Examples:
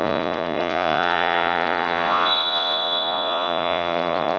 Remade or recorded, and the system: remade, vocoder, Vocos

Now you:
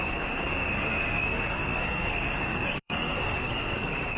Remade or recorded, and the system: remade, codec, SNAC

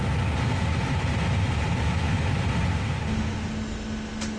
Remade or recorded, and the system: recorded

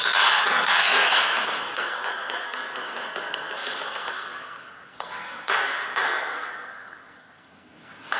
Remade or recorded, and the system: remade, codec, SNAC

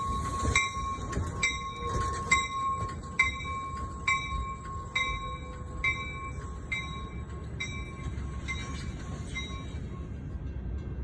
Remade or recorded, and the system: recorded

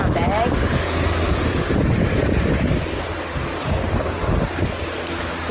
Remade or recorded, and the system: recorded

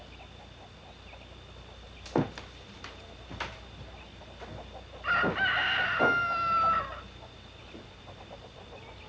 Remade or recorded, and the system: recorded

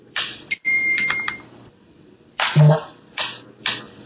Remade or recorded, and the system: remade, vocoder, BigVGAN v2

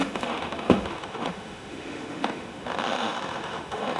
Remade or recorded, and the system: remade, autoencoder, DAC-VAE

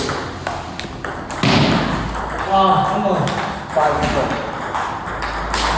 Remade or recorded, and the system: recorded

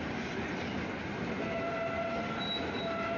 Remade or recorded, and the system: recorded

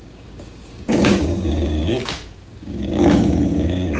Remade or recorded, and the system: remade, codec, DAC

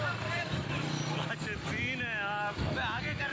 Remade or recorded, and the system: recorded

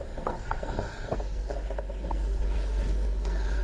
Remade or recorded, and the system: remade, codec, SNAC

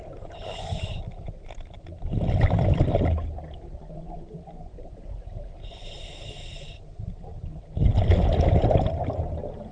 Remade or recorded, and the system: recorded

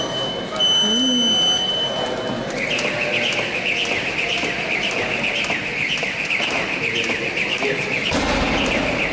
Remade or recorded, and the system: recorded